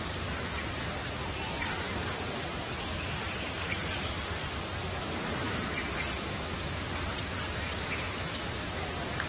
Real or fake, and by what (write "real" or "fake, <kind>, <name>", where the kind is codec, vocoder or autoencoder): fake, vocoder, BigVGAN v2